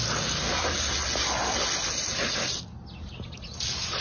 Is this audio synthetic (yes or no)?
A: no